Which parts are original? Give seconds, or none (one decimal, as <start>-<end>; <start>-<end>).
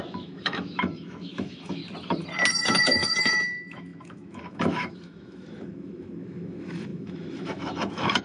1.8-2.5